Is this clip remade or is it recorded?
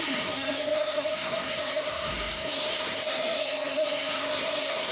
remade